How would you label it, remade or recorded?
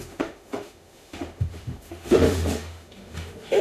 remade